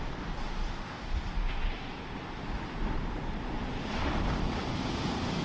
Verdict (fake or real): real